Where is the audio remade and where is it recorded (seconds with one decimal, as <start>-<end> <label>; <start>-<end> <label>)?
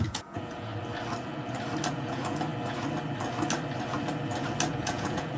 0.0-0.7 remade; 0.7-1.9 recorded; 1.9-2.5 remade; 2.5-4.7 recorded; 4.7-5.4 remade